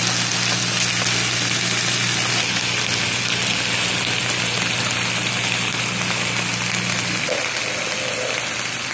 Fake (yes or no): no